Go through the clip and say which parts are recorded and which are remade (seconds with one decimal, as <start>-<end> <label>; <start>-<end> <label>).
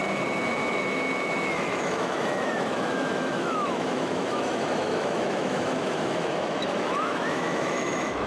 0.0-8.3 remade